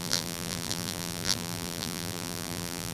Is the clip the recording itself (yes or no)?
no